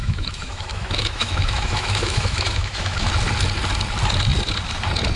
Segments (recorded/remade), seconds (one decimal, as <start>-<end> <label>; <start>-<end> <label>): 0.0-3.1 remade; 3.1-5.2 recorded